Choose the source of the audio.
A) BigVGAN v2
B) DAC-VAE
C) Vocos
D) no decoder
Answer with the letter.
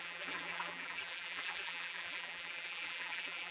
A